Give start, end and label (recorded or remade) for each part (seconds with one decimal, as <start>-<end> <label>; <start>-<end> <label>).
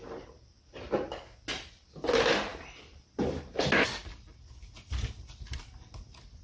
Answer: 0.0-6.4 recorded